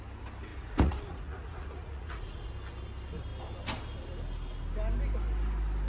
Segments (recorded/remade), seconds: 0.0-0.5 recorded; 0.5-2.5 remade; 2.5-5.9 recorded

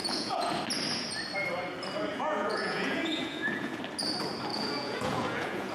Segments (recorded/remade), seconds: 0.0-0.6 remade; 0.6-2.1 recorded; 2.1-3.8 remade; 3.8-4.5 recorded; 4.5-5.7 remade

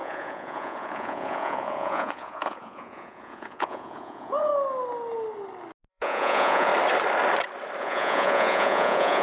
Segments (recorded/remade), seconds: 0.0-4.5 remade; 4.5-5.9 recorded; 5.9-6.7 remade; 6.7-7.8 recorded; 7.8-9.2 remade

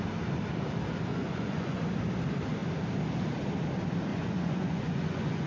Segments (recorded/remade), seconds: 0.0-1.1 recorded; 1.1-1.9 remade; 1.9-4.1 recorded; 4.1-5.5 remade